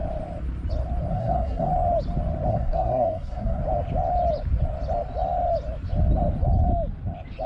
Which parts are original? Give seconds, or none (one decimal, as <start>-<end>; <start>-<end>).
0.0-1.1; 1.7-2.5; 3.6-7.5